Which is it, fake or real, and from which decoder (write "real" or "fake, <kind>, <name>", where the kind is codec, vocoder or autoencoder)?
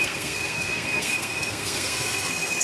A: fake, codec, SNAC